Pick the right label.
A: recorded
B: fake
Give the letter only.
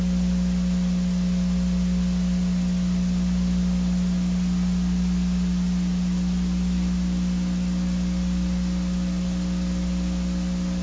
A